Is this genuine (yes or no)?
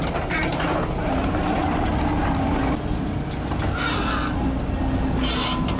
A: yes